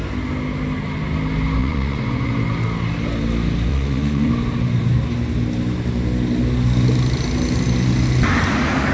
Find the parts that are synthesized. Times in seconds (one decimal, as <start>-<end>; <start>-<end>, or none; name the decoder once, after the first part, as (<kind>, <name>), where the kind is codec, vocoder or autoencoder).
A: 1.6-2.3 (vocoder, Vocos); 3.7-4.3